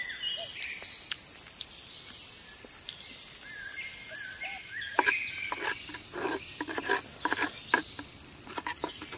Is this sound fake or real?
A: real